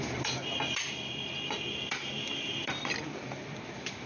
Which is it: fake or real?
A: fake